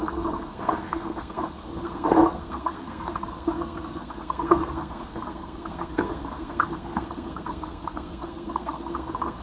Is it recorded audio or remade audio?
remade